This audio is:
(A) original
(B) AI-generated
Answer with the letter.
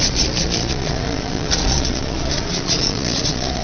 B